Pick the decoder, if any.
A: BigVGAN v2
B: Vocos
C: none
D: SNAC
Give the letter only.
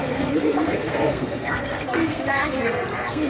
D